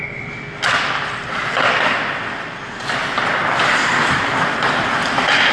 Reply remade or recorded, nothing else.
recorded